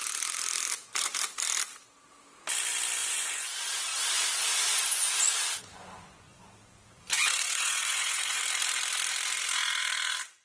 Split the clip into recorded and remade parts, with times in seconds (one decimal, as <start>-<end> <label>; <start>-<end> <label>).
0.0-3.0 recorded; 3.0-3.6 remade; 3.6-5.6 recorded; 5.6-8.4 remade; 8.4-10.4 recorded